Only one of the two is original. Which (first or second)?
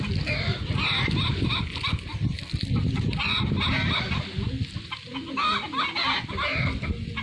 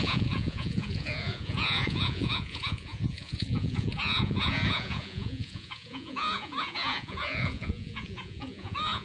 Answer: first